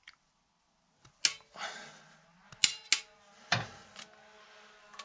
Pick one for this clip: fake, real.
real